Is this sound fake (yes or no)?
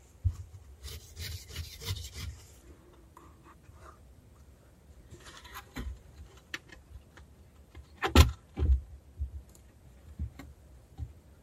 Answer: yes